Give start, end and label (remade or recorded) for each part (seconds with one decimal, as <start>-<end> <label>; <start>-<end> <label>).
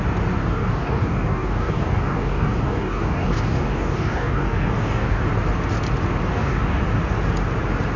0.0-0.4 recorded; 0.4-5.2 remade; 5.2-6.3 recorded; 6.3-6.8 remade; 6.8-8.0 recorded